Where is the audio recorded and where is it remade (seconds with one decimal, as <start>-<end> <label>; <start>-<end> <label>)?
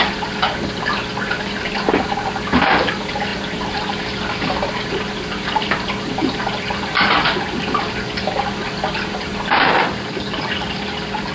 0.0-11.3 recorded